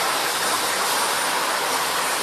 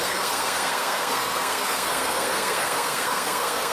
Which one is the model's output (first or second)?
second